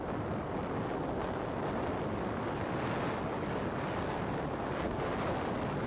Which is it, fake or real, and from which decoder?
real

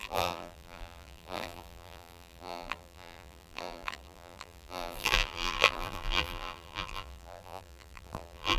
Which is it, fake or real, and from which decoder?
fake, vocoder, BigVGAN v2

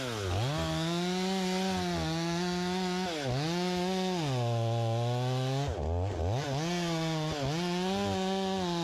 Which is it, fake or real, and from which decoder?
real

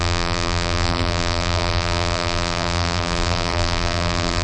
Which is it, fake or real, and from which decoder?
fake, vocoder, BigVGAN v2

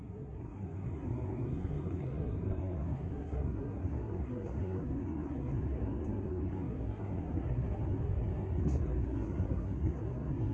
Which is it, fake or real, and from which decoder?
fake, codec, SNAC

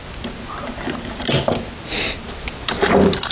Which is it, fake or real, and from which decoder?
real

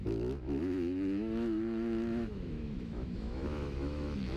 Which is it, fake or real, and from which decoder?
fake, autoencoder, DAC-VAE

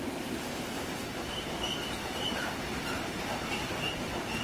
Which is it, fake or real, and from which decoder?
fake, vocoder, BigVGAN v2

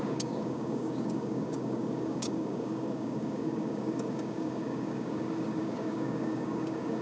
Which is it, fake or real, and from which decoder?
fake, codec, DAC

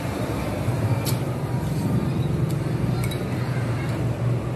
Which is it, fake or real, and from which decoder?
fake, vocoder, BigVGAN v2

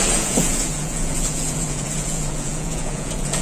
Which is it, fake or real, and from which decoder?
fake, vocoder, Vocos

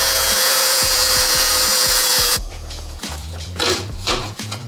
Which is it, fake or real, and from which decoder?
fake, vocoder, Vocos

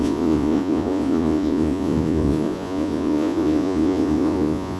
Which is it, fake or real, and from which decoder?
fake, vocoder, Vocos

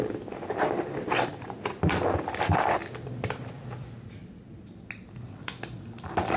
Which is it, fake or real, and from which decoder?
real